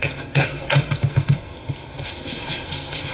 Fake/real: fake